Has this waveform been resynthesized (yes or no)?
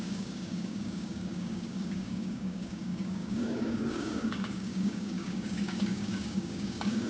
yes